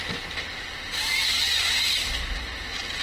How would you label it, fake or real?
real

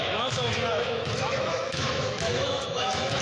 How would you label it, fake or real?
fake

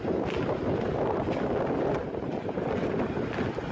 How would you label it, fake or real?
real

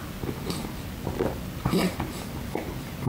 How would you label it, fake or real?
real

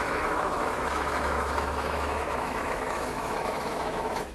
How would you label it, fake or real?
fake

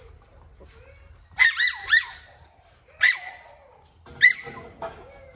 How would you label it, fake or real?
real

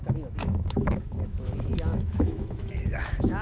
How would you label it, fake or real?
fake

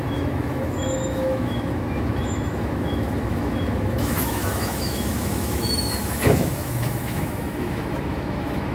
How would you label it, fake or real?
fake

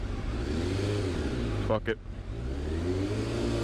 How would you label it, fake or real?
real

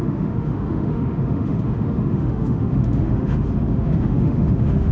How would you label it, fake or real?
fake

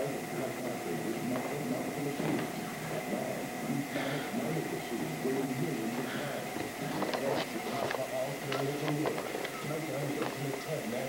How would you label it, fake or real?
real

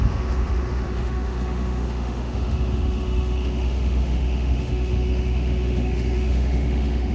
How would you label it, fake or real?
fake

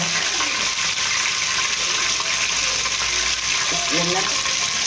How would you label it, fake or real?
real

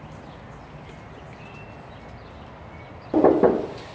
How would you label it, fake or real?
real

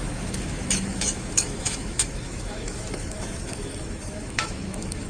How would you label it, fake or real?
fake